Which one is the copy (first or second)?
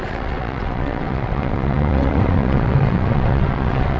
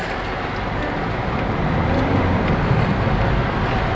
first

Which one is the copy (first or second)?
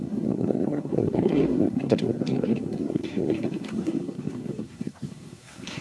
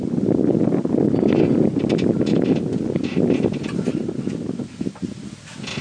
first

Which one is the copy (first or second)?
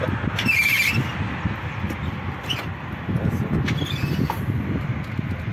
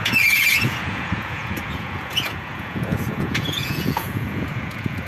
second